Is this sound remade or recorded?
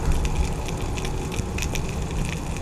recorded